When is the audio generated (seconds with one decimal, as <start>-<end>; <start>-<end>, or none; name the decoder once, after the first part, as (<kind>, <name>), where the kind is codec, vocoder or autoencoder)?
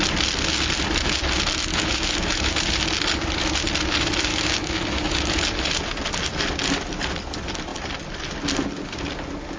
1.7-2.5 (autoencoder, DAC-VAE); 4.3-5.4